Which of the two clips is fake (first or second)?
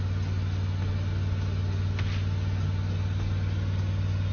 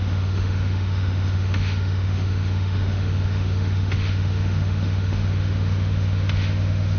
second